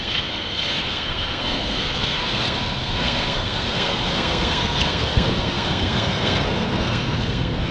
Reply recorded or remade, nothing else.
remade